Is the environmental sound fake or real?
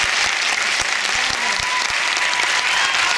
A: real